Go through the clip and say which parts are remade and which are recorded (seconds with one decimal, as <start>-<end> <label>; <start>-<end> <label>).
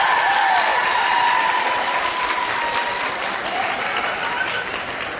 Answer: 0.0-5.2 recorded